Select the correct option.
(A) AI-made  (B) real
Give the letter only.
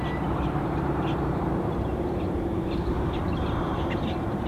A